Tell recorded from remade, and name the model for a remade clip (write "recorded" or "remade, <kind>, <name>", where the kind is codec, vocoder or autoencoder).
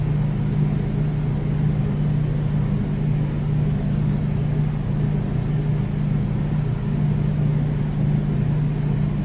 recorded